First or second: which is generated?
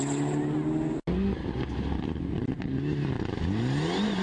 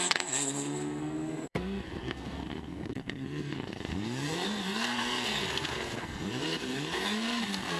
second